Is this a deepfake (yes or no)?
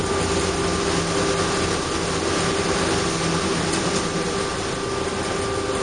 no